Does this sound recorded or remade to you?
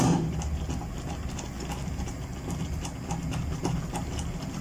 recorded